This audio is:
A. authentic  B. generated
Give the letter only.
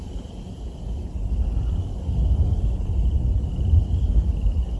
A